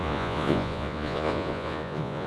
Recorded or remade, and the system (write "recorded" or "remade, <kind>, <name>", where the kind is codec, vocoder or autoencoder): remade, vocoder, Vocos